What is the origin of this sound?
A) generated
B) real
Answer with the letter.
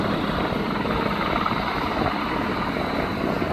B